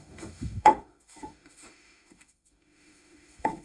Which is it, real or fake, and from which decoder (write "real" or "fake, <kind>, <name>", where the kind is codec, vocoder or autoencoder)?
fake, autoencoder, DAC-VAE